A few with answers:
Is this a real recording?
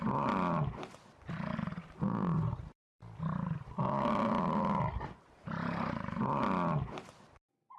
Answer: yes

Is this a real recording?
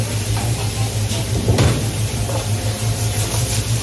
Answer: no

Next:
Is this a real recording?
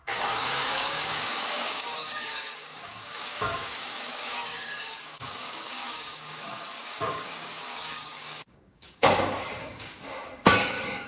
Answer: no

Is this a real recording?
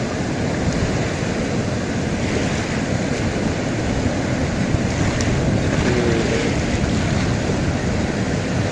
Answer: yes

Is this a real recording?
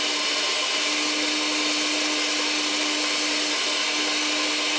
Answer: yes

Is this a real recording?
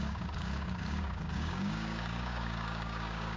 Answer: no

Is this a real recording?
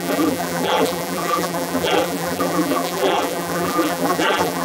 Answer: no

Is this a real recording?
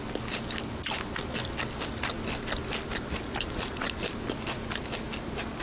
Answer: yes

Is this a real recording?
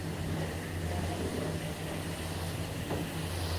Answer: yes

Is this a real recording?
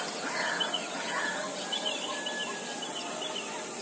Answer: yes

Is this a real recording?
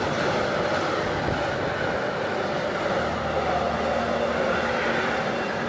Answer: yes